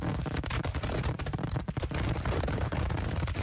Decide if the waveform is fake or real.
fake